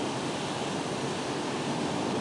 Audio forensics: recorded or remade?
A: recorded